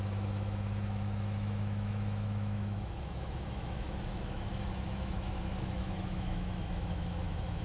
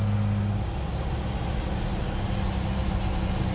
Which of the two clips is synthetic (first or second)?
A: first